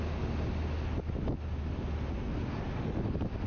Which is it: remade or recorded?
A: recorded